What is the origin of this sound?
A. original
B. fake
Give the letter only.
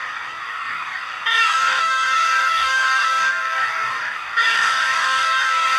B